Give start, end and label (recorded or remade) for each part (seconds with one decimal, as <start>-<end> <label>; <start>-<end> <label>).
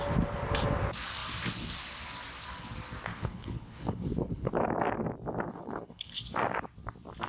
0.0-3.1 recorded; 3.1-4.5 remade; 4.5-5.5 recorded; 5.5-6.2 remade; 6.2-7.3 recorded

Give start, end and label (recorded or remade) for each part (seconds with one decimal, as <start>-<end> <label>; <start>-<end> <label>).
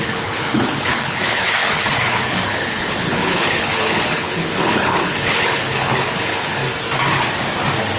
0.0-6.6 remade; 6.6-8.0 recorded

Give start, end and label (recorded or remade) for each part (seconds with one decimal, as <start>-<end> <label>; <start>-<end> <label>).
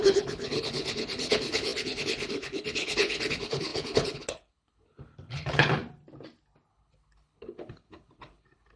0.0-5.8 remade; 5.8-6.7 recorded; 6.7-8.8 remade